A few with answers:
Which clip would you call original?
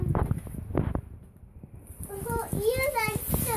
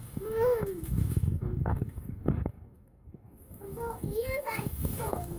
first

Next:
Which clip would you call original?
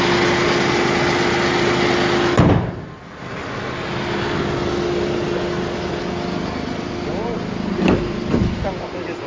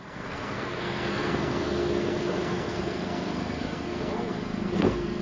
first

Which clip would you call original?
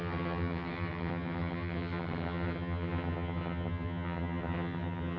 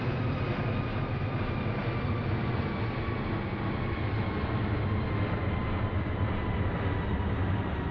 second